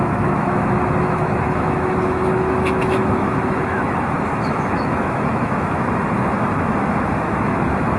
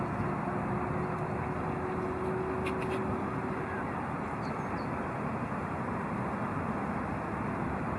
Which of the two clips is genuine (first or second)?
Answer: second